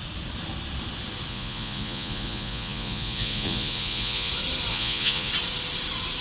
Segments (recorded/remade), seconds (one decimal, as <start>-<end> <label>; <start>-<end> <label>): 0.0-1.3 recorded; 1.3-4.3 remade; 4.3-4.7 recorded; 4.7-5.3 remade; 5.3-6.2 recorded